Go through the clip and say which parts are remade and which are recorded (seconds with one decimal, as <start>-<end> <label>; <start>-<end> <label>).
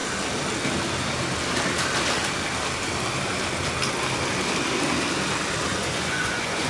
0.0-5.7 recorded; 5.7-6.7 remade